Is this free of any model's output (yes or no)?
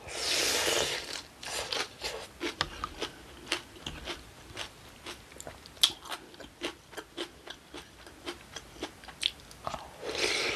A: yes